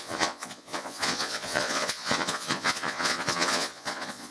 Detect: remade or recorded remade